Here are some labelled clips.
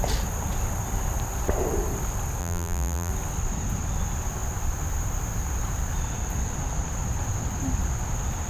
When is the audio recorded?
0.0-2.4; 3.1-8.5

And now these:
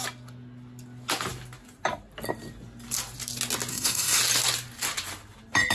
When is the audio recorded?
0.0-3.7; 4.2-5.7